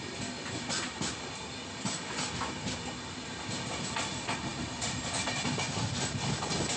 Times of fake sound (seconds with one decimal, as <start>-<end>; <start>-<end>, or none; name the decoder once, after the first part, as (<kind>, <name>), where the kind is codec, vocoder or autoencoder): none